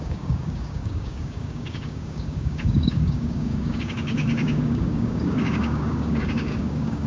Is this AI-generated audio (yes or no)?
yes